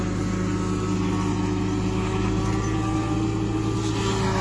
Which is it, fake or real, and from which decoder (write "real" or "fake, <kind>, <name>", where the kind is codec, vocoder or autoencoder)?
real